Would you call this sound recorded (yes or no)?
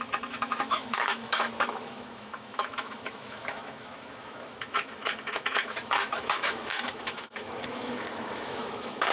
no